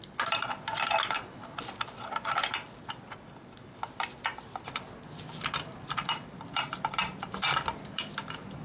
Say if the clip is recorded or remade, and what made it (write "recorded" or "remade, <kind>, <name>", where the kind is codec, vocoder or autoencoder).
recorded